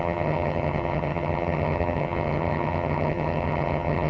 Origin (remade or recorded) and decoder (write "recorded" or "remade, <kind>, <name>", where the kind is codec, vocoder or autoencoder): remade, vocoder, HiFi-GAN